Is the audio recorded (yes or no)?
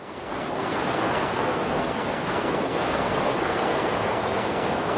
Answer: no